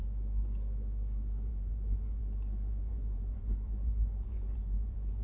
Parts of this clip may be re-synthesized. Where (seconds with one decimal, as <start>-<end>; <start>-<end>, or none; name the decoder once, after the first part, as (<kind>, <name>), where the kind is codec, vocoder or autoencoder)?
1.5-2.2 (vocoder, Vocos); 2.7-5.2